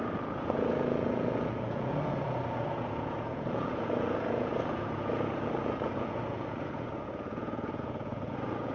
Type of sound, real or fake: fake